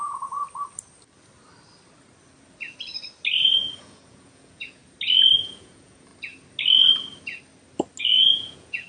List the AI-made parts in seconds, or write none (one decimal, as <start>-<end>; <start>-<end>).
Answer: 0.0-0.4; 3.8-4.8; 5.4-6.1; 8.0-8.9